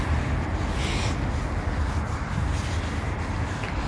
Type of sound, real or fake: real